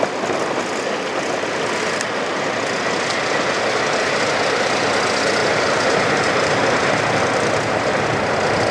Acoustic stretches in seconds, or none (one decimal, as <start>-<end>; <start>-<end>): 0.0-5.4; 6.6-8.7